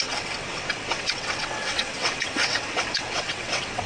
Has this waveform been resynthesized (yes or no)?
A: yes